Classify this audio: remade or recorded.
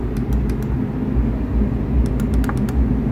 recorded